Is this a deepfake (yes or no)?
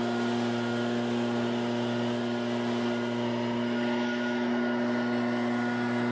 no